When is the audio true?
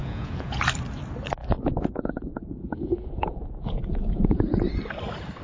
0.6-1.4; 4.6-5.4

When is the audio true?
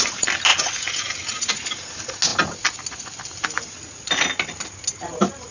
0.0-5.5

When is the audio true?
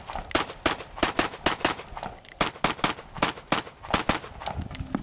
0.0-5.0